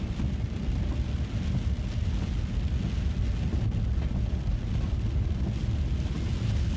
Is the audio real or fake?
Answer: real